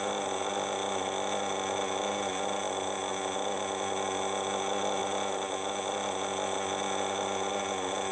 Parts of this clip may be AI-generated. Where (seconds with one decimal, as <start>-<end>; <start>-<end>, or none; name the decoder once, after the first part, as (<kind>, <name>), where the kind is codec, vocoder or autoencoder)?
none